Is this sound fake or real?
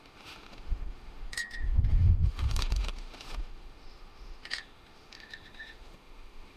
fake